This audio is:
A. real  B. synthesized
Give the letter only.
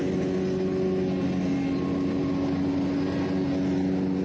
A